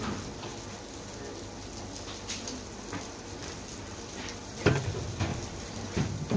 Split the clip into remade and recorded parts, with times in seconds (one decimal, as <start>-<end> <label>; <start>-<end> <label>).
0.0-0.5 remade; 0.5-3.2 recorded; 3.2-6.4 remade